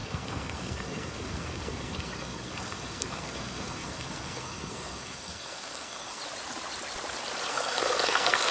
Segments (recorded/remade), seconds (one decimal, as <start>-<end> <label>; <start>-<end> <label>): 0.0-6.2 remade; 6.2-7.5 recorded; 7.5-8.5 remade